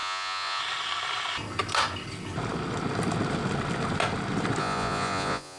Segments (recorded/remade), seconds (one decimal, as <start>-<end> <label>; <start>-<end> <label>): 0.0-0.6 remade; 0.6-4.6 recorded; 4.6-5.6 remade

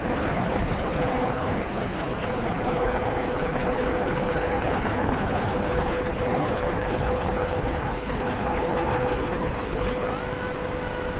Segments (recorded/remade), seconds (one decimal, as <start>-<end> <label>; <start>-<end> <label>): 0.0-10.1 remade; 10.1-11.2 recorded

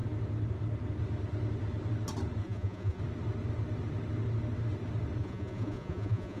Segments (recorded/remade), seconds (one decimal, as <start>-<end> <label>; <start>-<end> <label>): 0.0-2.4 recorded; 2.4-3.0 remade; 3.0-5.2 recorded; 5.2-6.4 remade